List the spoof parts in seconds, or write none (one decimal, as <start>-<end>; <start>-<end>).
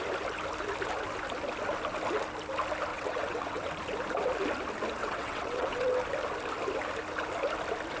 2.9-3.7; 5.0-5.9